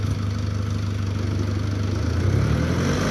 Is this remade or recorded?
recorded